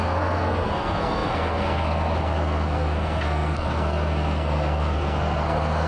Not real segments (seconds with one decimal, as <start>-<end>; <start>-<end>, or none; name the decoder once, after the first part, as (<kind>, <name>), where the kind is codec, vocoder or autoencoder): 0.0-5.9 (codec, SNAC)